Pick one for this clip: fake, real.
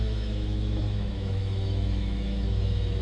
fake